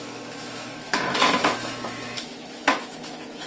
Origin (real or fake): fake